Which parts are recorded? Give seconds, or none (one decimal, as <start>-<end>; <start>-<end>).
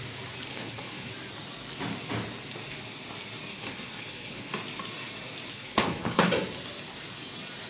0.0-0.5; 1.1-3.5; 4.5-5.5; 6.3-7.7